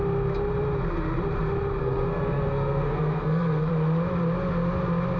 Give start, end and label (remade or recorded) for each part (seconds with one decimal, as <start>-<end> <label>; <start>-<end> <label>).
0.0-1.8 recorded; 1.8-3.7 remade; 3.7-5.2 recorded